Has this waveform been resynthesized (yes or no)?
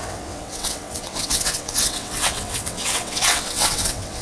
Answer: yes